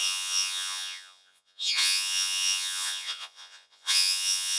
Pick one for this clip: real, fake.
fake